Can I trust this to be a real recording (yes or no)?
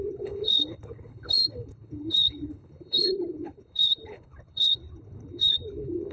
no